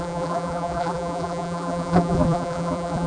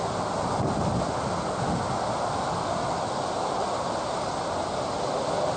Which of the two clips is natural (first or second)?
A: second